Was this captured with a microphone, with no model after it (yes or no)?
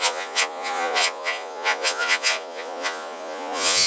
no